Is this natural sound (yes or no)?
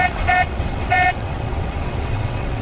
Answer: no